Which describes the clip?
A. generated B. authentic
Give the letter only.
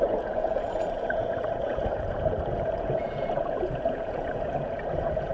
A